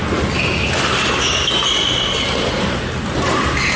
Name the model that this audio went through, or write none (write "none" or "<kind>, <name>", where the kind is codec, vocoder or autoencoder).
none